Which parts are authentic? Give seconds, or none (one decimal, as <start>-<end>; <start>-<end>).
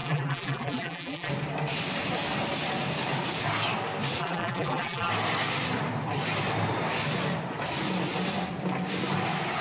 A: 1.3-4.2; 5.1-9.6